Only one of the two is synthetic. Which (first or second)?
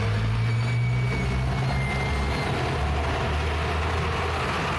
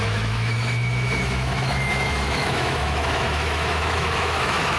second